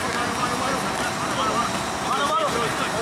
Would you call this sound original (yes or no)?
yes